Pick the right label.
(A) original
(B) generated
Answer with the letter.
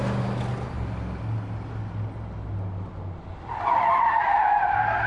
A